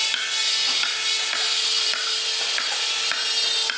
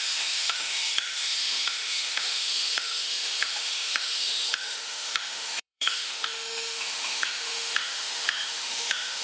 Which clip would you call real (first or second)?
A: first